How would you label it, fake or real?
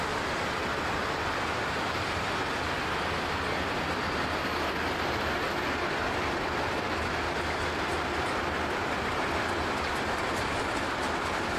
real